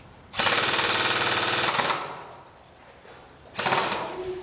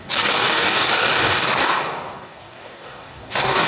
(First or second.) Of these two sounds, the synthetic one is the second